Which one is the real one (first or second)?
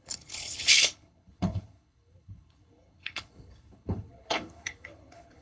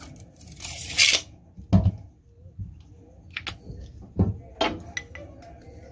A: second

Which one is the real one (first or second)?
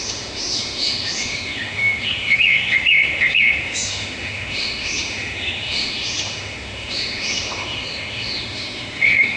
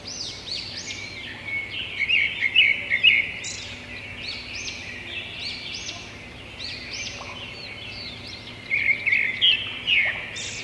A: second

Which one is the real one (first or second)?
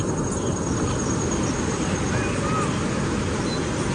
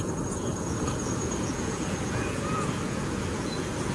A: first